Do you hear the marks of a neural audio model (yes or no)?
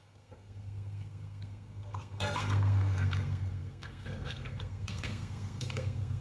yes